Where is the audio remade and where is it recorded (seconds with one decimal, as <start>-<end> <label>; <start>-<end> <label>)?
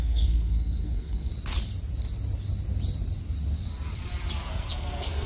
0.0-1.3 remade; 1.3-4.5 recorded; 4.5-5.3 remade